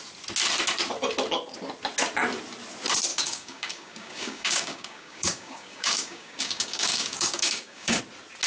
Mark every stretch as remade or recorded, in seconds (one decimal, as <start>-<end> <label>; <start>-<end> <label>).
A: 0.0-3.1 recorded; 3.1-8.0 remade; 8.0-8.5 recorded